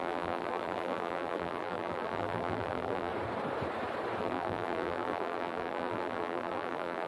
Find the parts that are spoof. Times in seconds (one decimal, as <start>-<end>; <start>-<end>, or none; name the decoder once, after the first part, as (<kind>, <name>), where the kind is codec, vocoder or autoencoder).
0.0-3.1 (vocoder, BigVGAN v2); 4.2-7.1